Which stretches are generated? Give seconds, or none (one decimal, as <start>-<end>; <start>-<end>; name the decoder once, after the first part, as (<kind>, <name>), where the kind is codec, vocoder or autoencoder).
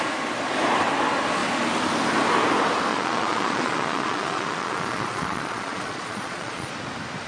2.9-6.7 (vocoder, Vocos)